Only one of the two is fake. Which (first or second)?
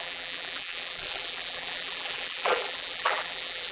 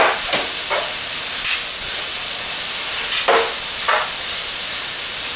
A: first